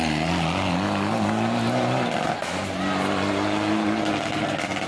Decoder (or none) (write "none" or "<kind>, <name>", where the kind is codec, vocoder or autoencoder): none